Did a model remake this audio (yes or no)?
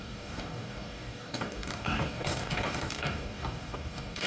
yes